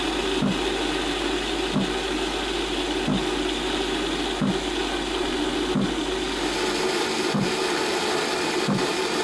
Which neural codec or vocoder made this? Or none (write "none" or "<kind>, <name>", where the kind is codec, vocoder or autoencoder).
none